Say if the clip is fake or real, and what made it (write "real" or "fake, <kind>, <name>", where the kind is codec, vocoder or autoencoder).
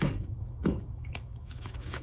fake, autoencoder, DAC-VAE